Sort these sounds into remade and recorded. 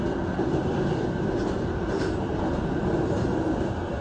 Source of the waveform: recorded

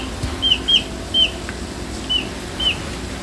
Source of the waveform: recorded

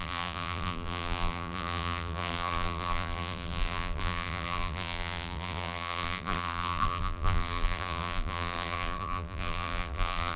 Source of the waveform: remade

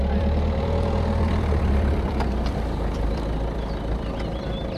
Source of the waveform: remade